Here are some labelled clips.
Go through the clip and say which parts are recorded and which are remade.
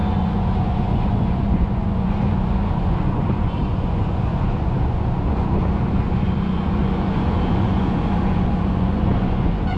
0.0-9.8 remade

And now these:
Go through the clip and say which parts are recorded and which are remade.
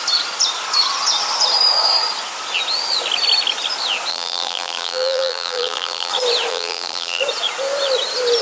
0.0-4.1 recorded; 4.1-6.1 remade; 6.1-6.5 recorded; 6.5-7.2 remade; 7.2-8.4 recorded